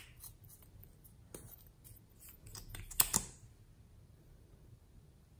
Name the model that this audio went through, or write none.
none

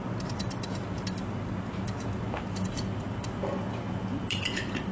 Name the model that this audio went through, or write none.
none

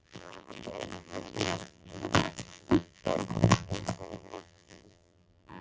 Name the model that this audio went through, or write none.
vocoder, BigVGAN v2